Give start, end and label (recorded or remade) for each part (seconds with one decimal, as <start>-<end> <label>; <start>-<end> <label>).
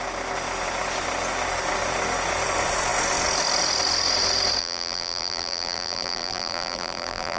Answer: 0.0-4.6 recorded; 4.6-7.4 remade